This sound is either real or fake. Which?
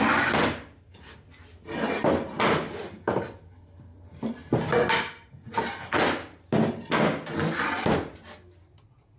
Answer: real